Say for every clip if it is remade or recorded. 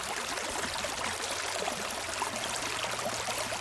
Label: recorded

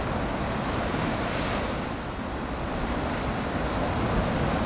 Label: recorded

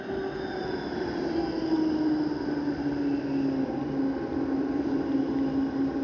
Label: recorded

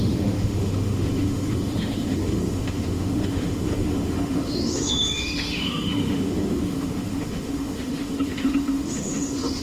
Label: remade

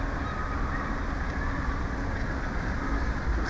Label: recorded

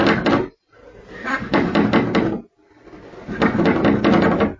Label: recorded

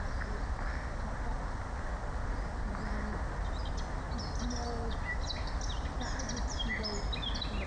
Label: recorded